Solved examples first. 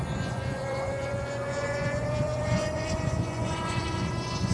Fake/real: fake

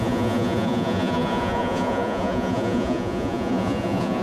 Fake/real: fake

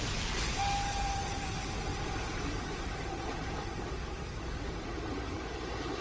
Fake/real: real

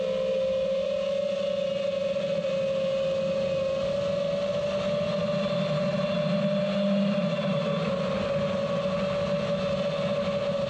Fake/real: real